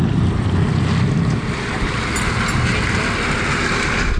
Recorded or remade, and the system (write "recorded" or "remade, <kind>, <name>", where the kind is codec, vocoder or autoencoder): recorded